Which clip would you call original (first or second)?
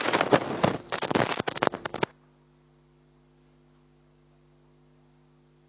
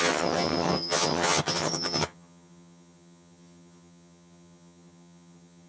first